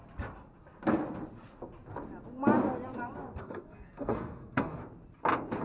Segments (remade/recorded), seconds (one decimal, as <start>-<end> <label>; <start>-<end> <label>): 0.0-3.4 recorded; 3.4-4.8 remade; 4.8-5.6 recorded